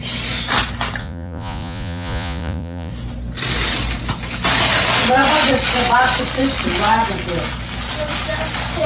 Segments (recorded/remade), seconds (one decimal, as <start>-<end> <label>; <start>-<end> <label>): 0.0-1.0 recorded; 1.0-2.9 remade; 2.9-8.9 recorded